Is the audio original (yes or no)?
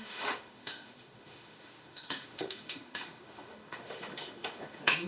no